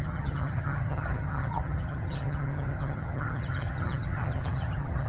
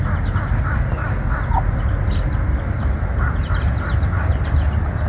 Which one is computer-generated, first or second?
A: first